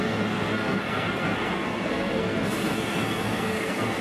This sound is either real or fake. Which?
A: fake